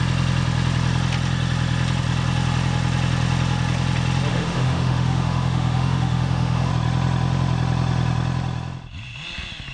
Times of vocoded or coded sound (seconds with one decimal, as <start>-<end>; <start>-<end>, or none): 4.3-6.7